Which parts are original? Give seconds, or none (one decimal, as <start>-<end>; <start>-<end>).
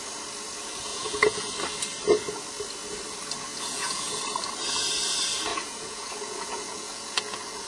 0.0-0.9; 1.5-3.5; 4.2-5.5